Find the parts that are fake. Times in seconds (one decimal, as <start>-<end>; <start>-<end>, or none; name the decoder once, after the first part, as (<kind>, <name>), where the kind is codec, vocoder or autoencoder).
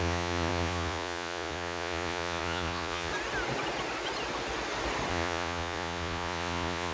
0.0-3.1 (vocoder, Vocos); 5.1-6.9